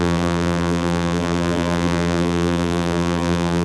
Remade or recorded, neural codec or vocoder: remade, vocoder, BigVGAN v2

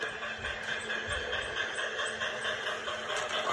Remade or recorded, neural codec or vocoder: recorded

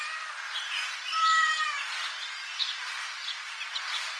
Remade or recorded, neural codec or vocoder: recorded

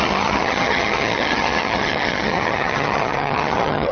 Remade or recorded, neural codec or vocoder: remade, vocoder, HiFi-GAN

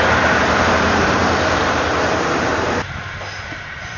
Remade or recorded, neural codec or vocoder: remade, vocoder, BigVGAN v2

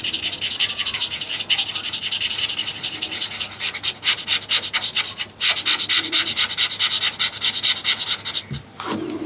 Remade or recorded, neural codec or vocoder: recorded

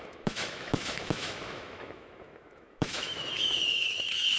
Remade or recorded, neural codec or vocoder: remade, autoencoder, DAC-VAE